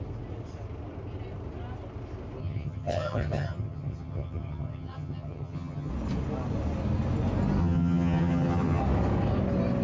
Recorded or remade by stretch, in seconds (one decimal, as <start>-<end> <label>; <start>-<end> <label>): 0.0-2.4 recorded; 2.4-5.9 remade; 5.9-7.6 recorded; 7.6-8.8 remade; 8.8-9.8 recorded